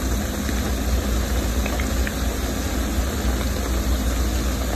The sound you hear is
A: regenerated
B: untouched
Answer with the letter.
B